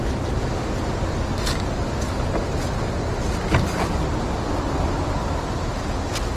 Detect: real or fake real